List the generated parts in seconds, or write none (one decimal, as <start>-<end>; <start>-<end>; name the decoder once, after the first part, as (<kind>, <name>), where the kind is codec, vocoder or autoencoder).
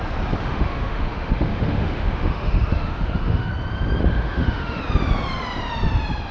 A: 0.4-3.5 (autoencoder, DAC-VAE); 4.0-4.8